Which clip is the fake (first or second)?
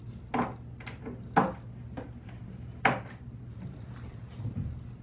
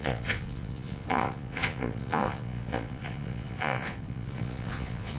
second